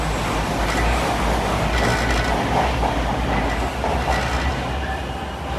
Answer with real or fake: real